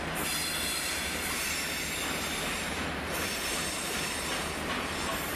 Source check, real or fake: fake